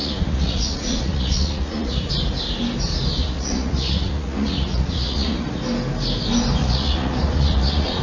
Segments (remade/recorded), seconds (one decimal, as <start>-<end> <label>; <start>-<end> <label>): 0.0-2.1 remade; 2.1-3.2 recorded; 3.2-5.6 remade; 5.6-6.6 recorded; 6.6-8.0 remade